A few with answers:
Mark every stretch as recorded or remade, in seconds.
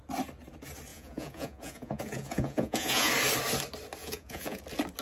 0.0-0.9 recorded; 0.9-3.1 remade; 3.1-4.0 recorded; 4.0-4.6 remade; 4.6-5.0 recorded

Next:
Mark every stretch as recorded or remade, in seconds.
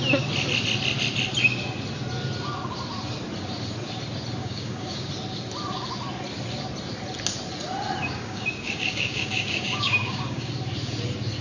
0.0-4.4 recorded; 4.4-5.1 remade; 5.1-8.0 recorded; 8.0-10.5 remade; 10.5-11.4 recorded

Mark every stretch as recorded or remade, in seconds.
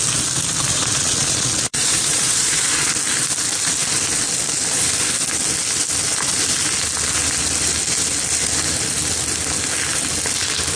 0.0-0.7 recorded; 0.7-2.9 remade; 2.9-10.8 recorded